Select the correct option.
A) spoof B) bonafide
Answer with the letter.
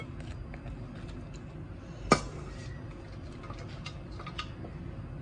B